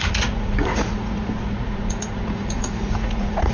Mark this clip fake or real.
fake